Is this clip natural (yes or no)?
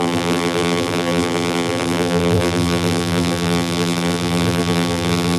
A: no